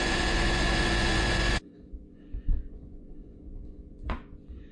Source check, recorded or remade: remade